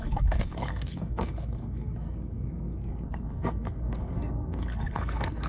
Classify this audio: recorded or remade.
remade